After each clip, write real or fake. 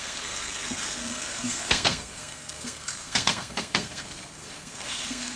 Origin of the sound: fake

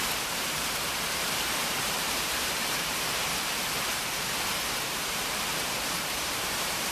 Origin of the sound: fake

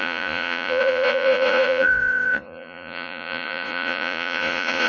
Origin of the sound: fake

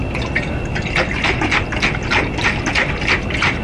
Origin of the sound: real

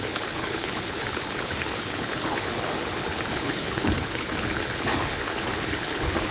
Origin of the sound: fake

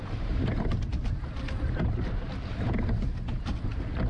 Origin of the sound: fake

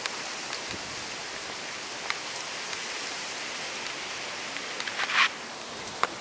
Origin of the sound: real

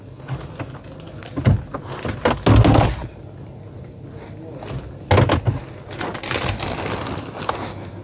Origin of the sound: real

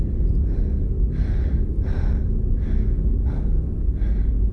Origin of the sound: real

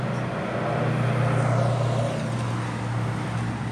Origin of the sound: real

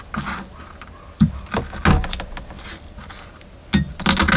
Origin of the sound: real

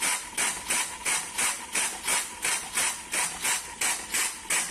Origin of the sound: real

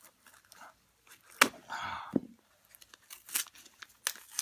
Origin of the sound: real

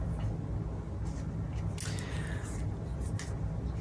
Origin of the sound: real